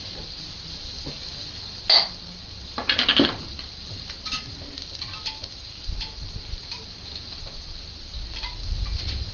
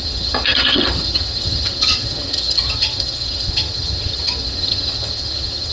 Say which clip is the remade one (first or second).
second